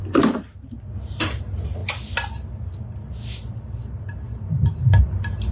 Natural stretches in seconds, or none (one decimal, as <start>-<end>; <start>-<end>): 0.0-5.5